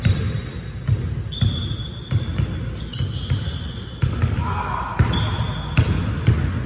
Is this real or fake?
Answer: real